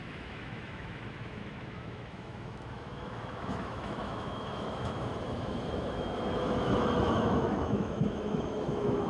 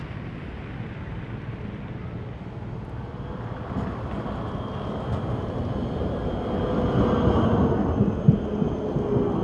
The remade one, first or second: first